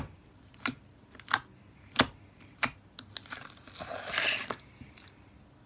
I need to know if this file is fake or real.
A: real